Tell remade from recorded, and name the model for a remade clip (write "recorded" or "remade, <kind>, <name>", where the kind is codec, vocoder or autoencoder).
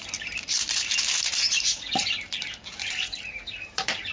remade, vocoder, BigVGAN v2